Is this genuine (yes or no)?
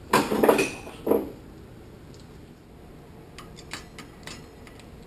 yes